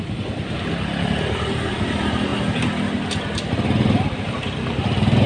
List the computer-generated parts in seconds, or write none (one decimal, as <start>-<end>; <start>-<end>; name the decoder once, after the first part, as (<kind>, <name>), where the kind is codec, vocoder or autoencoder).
none